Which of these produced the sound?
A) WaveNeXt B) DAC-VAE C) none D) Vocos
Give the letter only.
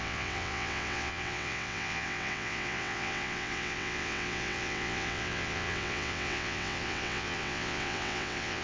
A